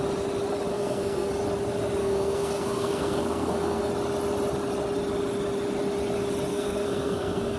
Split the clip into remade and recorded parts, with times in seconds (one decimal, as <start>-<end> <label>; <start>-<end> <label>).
0.0-0.7 recorded; 0.7-1.3 remade; 1.3-2.0 recorded; 2.0-3.9 remade; 3.9-6.5 recorded; 6.5-7.6 remade